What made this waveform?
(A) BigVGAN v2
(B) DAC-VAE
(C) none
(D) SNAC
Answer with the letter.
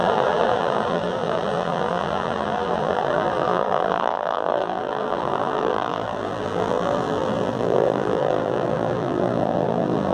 A